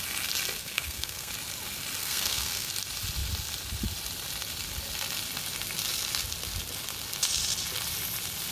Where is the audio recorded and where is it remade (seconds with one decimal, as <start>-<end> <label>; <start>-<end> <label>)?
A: 0.0-0.6 recorded; 0.6-1.3 remade; 1.3-2.0 recorded; 2.0-2.7 remade; 2.7-8.5 recorded